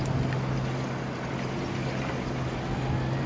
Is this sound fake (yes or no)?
no